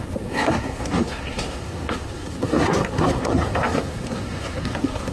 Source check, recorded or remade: remade